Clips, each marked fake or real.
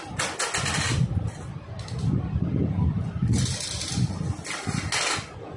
real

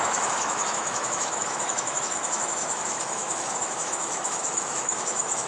fake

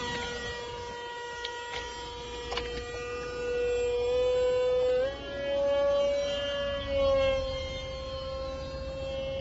real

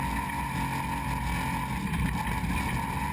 real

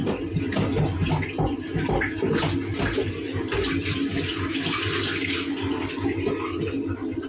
real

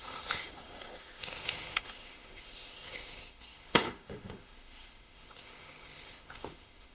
fake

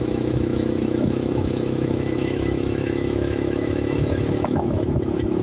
fake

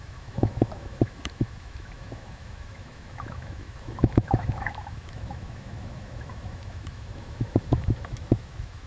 fake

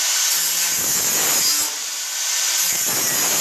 real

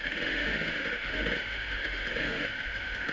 fake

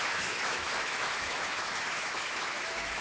fake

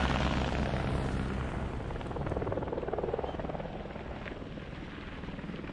real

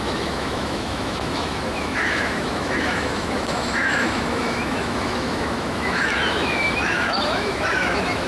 fake